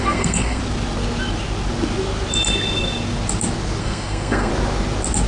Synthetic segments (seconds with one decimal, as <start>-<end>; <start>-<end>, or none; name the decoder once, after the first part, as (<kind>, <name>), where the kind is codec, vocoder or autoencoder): 0.0-0.6 (codec, SNAC); 3.8-4.5